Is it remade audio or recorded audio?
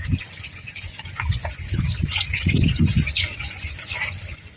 remade